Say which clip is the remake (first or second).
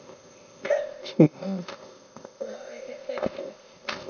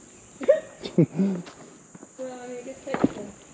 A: first